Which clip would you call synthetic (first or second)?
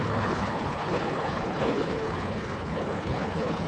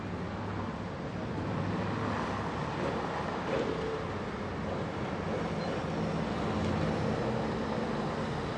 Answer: first